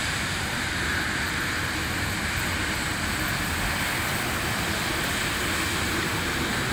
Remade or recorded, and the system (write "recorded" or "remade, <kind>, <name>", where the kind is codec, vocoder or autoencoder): recorded